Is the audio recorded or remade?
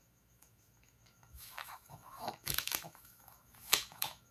remade